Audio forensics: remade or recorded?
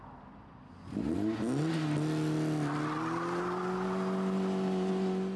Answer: recorded